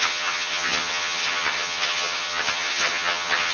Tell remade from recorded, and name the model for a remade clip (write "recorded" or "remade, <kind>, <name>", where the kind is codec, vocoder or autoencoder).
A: remade, vocoder, HiFi-GAN